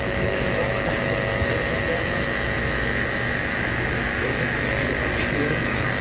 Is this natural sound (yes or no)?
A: no